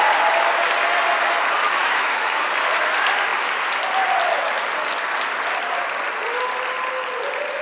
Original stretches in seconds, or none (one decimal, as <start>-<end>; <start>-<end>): 0.0-1.8; 2.4-7.6